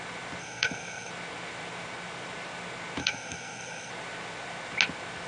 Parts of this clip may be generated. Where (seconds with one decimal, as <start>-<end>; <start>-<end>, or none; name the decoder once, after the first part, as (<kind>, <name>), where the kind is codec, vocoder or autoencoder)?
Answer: 0.4-1.1 (codec, SNAC); 3.0-3.9